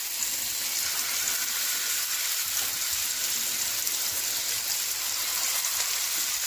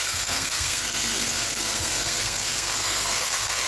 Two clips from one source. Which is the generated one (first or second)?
second